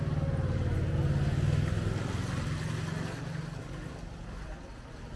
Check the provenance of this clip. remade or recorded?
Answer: recorded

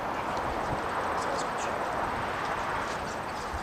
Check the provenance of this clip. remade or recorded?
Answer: recorded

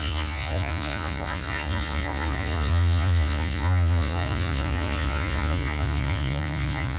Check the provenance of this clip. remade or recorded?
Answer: remade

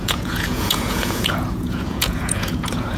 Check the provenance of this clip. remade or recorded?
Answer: remade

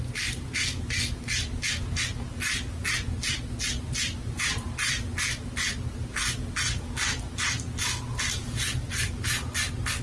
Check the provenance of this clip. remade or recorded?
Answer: recorded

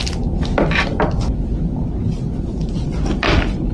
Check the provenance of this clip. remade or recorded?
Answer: recorded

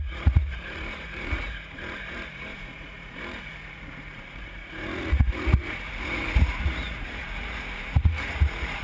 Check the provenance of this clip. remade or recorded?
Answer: remade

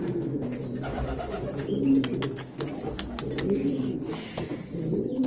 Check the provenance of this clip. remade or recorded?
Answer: recorded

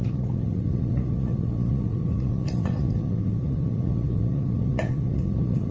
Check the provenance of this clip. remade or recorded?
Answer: remade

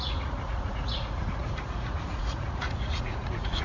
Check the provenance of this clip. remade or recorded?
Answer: remade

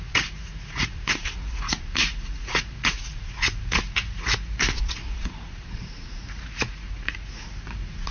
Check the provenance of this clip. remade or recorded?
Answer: remade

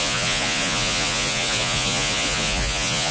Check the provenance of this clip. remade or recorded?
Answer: remade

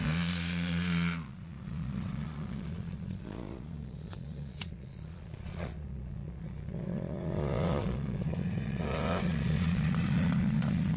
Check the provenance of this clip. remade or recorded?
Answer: remade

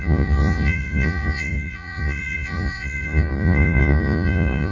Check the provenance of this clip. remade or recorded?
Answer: remade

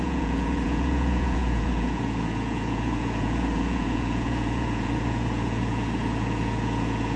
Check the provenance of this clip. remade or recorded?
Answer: remade